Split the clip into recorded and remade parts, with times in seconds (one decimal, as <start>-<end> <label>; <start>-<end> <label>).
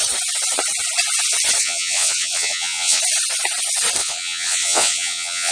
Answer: 0.0-1.6 recorded; 1.6-3.0 remade; 3.0-4.0 recorded; 4.0-5.5 remade